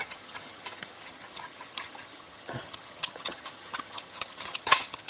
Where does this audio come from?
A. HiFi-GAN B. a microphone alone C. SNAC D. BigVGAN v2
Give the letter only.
A